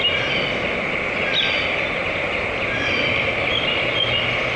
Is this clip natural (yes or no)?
yes